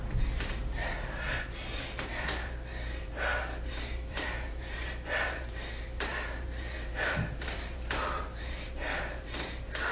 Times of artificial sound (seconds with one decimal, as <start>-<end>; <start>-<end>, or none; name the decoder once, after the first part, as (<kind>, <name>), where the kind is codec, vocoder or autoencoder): 0.0-9.9 (vocoder, BigVGAN v2)